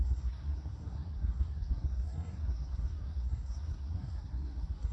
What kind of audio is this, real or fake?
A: fake